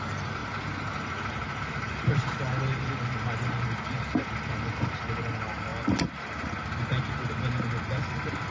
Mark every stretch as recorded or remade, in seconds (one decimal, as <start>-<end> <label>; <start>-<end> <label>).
0.0-8.5 recorded